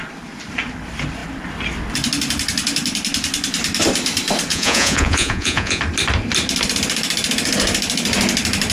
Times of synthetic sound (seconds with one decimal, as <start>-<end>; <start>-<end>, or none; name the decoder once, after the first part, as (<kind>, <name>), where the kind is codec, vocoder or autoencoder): 4.5-5.8 (vocoder, Vocos)